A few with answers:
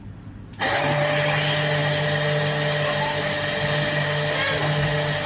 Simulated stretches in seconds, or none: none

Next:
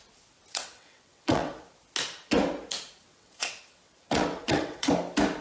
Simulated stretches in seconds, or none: 0.5-1.5 (vocoder, WaveNeXt); 3.0-4.9